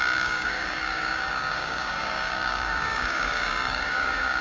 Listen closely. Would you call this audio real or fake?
fake